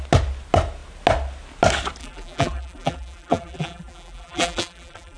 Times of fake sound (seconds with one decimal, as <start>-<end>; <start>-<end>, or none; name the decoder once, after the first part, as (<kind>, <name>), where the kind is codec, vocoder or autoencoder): 2.0-5.2 (vocoder, BigVGAN v2)

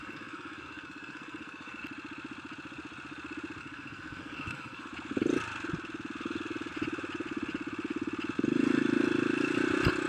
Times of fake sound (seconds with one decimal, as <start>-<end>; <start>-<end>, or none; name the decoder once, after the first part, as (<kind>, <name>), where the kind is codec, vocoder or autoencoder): 0.0-1.8 (codec, SNAC); 3.6-4.9

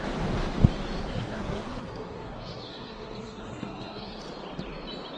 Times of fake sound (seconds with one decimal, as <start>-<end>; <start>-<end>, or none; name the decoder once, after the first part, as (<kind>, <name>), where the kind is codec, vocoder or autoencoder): 1.1-4.2 (codec, SNAC)

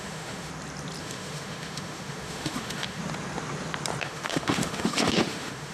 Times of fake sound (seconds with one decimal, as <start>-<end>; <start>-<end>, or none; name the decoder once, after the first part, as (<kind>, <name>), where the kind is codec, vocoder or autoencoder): 0.0-0.5 (autoencoder, DAC-VAE); 1.0-3.0; 4.0-5.7

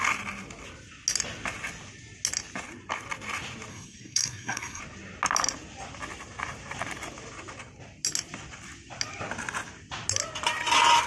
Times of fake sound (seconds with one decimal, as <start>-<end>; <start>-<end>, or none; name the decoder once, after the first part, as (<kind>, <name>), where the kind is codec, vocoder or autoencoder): 3.7-4.8 (codec, SNAC)

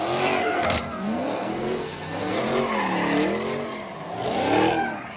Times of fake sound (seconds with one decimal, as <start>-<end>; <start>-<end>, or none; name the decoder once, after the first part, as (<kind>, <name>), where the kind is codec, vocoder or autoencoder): 0.4-2.4 (codec, SNAC)

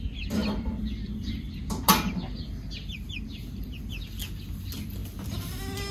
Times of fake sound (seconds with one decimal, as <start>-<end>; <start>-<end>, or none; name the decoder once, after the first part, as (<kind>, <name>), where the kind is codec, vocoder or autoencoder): none

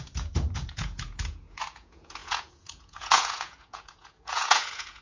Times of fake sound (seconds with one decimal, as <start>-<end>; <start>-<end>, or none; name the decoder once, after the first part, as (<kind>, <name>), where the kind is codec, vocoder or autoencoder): 0.0-5.0 (vocoder, Vocos)